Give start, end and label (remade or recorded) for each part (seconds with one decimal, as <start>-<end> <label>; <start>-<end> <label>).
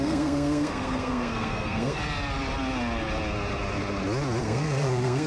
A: 0.0-2.0 remade; 2.0-4.4 recorded; 4.4-5.3 remade